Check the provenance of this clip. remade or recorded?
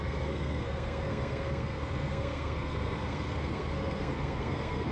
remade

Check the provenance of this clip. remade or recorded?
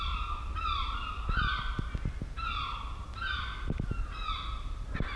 recorded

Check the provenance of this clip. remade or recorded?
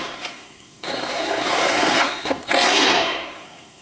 remade